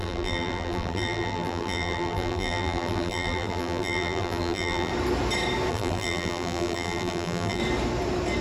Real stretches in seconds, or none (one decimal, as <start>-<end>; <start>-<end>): 4.9-5.7; 7.6-8.4